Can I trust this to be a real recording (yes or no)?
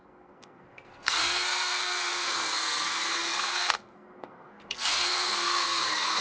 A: no